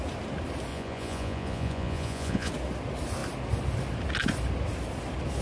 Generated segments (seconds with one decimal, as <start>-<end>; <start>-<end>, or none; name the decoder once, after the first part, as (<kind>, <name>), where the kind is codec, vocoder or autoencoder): 0.7-2.5 (vocoder, Vocos)